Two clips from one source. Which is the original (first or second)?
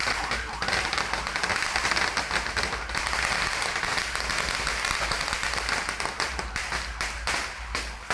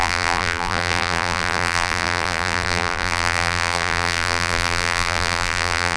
first